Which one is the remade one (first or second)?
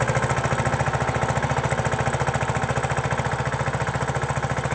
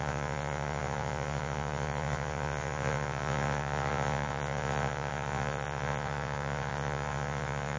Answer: second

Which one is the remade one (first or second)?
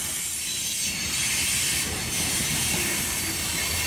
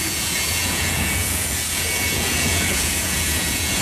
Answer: second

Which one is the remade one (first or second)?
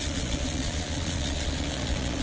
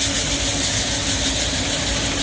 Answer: first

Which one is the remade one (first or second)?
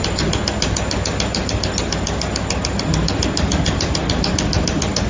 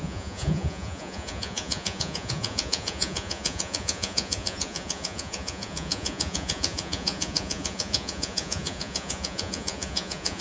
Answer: second